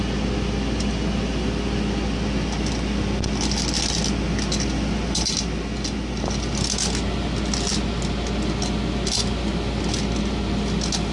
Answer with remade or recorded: recorded